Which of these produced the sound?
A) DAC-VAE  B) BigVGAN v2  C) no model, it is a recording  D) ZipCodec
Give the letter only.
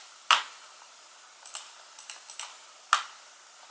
C